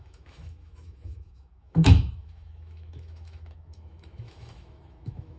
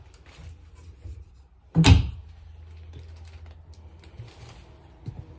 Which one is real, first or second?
second